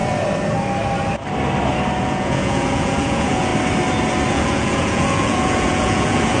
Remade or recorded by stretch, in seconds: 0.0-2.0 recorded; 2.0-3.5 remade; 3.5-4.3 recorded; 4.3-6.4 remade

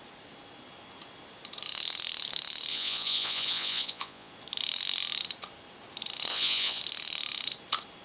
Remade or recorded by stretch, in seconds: 0.0-2.7 recorded; 2.7-4.3 remade; 4.3-6.3 recorded; 6.3-6.8 remade; 6.8-8.0 recorded

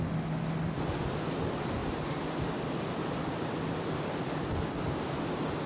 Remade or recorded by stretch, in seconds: 0.0-5.7 recorded

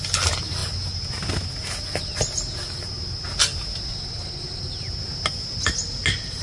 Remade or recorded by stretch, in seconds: 0.0-6.4 recorded

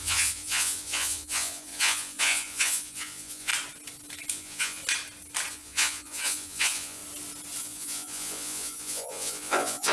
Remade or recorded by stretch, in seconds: 0.0-3.5 remade; 3.5-4.3 recorded; 4.3-4.8 remade; 4.8-5.5 recorded; 5.5-7.0 remade; 7.0-7.6 recorded; 7.6-9.9 remade

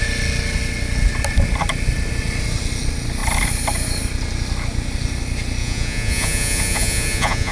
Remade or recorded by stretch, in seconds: 0.0-5.6 recorded; 5.6-7.5 remade